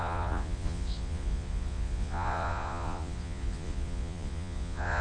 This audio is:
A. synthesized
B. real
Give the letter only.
A